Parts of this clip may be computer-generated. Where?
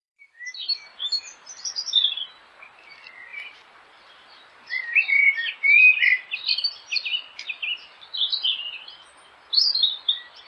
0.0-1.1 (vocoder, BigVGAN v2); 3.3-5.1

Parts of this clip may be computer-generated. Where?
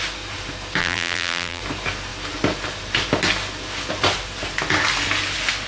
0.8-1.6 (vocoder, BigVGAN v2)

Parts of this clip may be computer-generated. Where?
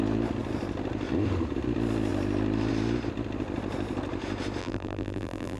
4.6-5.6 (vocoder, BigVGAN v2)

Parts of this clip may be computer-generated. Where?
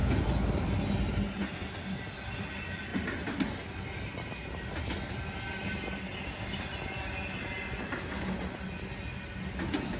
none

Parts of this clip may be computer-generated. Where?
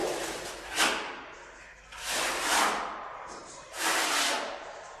none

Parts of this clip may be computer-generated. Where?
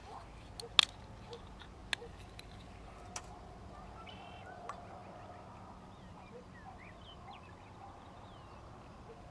1.1-1.8 (vocoder, BigVGAN v2); 3.2-5.0; 5.8-9.3